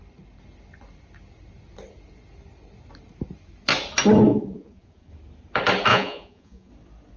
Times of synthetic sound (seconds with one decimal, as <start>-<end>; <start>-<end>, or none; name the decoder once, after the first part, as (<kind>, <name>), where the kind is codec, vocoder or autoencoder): 4.3-5.1 (vocoder, Vocos); 5.9-6.7